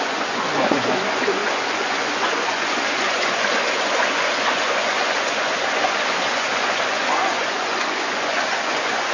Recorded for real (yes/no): no